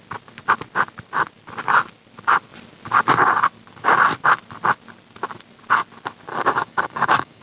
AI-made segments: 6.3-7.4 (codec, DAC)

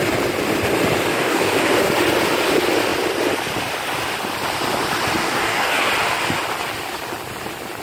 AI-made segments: 1.1-1.9 (codec, DAC); 5.2-5.9

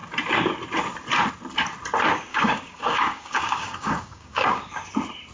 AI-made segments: 2.3-4.7 (codec, DAC)

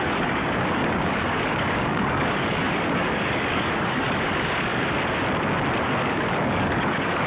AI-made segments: 0.0-4.7 (codec, DAC); 5.8-7.3

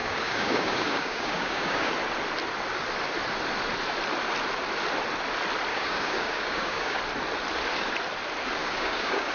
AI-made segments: 0.0-1.9 (codec, DAC); 5.7-7.0; 8.6-9.3

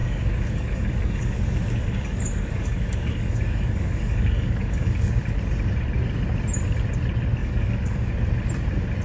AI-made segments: 0.0-5.1 (codec, DAC); 7.4-8.1

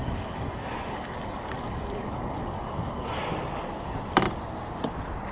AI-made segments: 0.0-3.2 (codec, DAC)

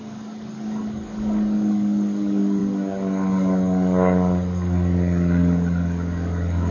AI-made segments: 0.0-6.7 (codec, DAC)